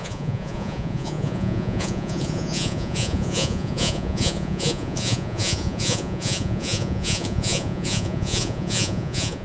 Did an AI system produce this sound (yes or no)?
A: yes